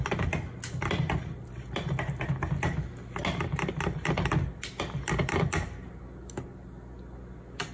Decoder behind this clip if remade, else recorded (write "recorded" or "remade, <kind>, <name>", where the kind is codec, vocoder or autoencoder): recorded